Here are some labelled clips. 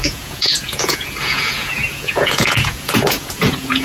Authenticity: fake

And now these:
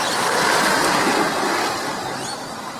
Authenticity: real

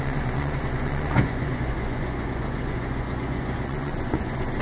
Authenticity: fake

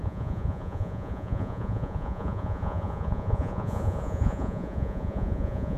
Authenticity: fake